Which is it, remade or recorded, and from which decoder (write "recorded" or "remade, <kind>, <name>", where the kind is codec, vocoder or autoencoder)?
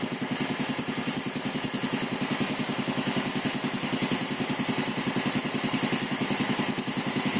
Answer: recorded